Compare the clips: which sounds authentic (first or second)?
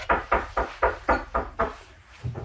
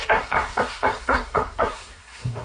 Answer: first